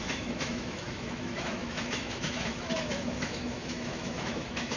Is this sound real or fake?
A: fake